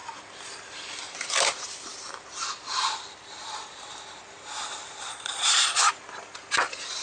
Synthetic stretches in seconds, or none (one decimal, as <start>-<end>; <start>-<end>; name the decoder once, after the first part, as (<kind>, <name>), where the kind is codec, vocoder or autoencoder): 5.1-5.9 (vocoder, Vocos)